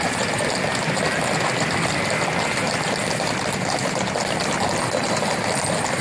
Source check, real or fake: real